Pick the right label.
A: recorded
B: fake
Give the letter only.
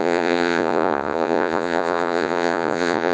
B